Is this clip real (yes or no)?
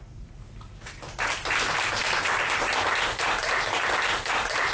no